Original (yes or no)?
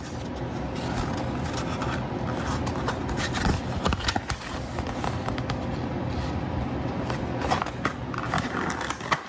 yes